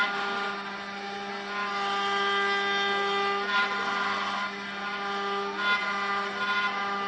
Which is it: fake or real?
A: real